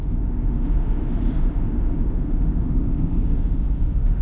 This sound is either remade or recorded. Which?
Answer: remade